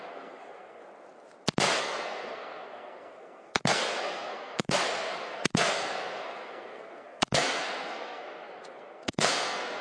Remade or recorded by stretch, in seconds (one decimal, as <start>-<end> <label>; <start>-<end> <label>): 0.0-0.8 remade; 0.8-1.8 recorded; 1.8-9.8 remade